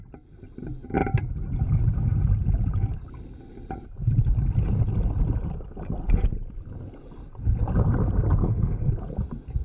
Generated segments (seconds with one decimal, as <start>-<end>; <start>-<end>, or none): 8.4-8.9